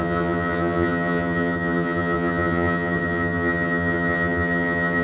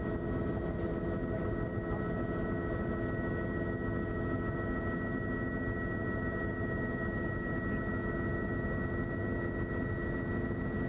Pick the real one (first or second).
second